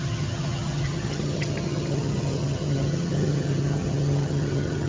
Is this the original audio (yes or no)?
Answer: no